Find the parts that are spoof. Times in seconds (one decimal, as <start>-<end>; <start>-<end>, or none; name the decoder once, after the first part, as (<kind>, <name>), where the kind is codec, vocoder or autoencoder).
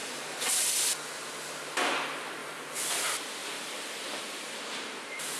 0.0-0.9 (vocoder, BigVGAN v2); 2.4-3.0; 3.4-5.4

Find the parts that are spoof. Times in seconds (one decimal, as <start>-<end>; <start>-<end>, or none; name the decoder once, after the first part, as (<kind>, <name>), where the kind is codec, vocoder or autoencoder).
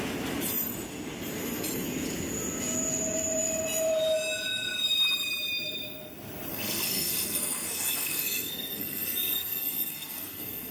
6.5-10.7 (codec, SNAC)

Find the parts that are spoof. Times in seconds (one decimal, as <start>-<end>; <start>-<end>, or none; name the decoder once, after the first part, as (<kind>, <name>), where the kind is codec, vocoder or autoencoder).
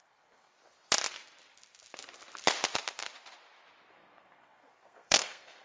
0.0-0.5 (codec, SNAC); 3.9-5.6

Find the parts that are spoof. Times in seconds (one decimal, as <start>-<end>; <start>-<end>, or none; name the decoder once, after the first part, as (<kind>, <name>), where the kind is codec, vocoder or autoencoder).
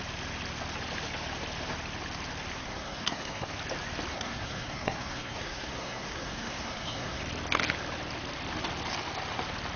2.6-3.5 (codec, SNAC); 4.1-7.2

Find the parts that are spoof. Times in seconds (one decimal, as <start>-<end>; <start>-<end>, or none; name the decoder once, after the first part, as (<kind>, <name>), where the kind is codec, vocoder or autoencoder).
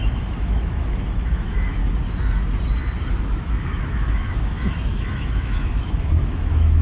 0.0-1.8 (autoencoder, DAC-VAE); 3.1-6.8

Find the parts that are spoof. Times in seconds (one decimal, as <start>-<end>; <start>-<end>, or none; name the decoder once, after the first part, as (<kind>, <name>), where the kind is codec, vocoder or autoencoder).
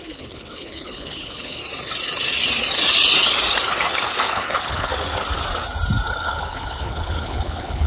0.0-1.6 (codec, HILCodec); 4.3-4.9; 6.1-7.9